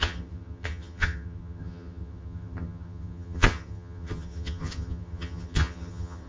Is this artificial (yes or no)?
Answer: yes